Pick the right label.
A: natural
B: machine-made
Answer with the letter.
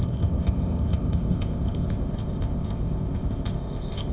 B